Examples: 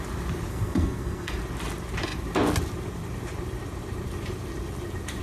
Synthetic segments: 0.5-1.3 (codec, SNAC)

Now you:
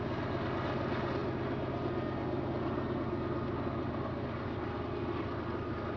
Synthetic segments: none

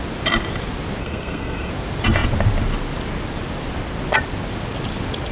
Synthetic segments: 1.0-1.7 (codec, SNAC)